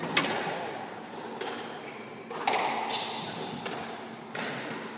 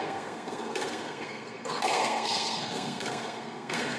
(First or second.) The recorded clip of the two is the first